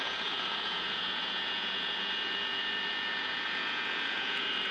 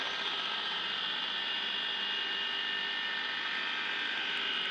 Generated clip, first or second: first